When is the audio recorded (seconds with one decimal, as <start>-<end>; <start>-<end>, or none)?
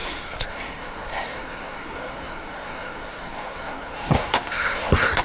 none